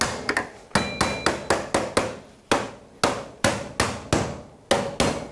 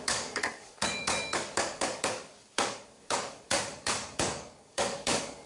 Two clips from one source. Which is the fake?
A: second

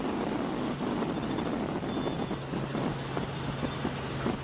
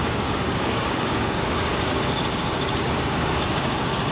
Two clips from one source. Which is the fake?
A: second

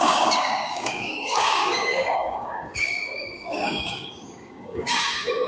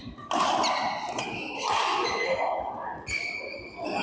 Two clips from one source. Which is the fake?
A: first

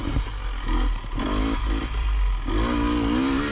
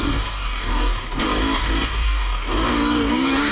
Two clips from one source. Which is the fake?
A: second